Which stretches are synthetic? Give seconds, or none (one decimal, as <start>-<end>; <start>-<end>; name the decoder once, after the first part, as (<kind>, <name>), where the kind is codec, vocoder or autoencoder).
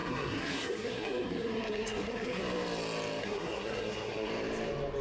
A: 0.0-2.4 (codec, SNAC); 3.2-4.3